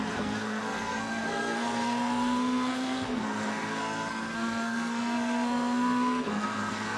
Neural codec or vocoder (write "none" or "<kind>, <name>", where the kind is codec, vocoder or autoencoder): codec, SNAC